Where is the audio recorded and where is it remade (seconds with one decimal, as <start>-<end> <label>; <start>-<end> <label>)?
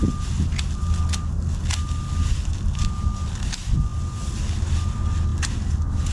0.0-6.1 recorded